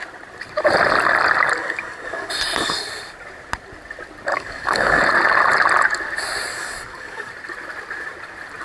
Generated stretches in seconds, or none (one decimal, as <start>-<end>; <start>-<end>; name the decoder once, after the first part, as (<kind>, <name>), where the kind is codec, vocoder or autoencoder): 1.6-2.3 (codec, DAC); 4.3-5.0; 6.5-7.3